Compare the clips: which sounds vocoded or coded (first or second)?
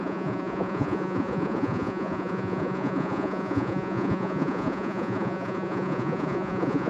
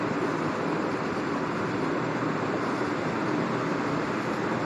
first